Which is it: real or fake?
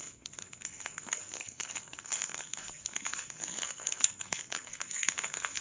fake